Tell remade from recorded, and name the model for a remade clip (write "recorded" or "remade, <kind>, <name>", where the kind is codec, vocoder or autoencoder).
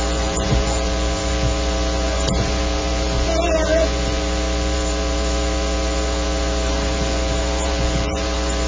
remade, vocoder, Vocos